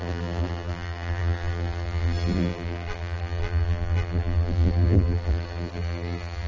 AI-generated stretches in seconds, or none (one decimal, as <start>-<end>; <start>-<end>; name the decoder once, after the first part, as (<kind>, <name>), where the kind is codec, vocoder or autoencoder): 0.0-6.5 (vocoder, BigVGAN v2)